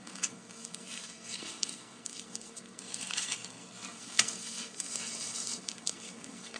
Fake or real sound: fake